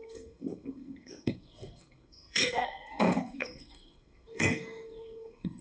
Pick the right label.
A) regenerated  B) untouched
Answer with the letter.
A